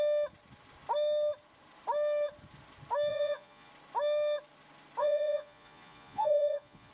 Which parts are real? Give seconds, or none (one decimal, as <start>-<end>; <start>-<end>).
0.0-3.1; 3.7-5.0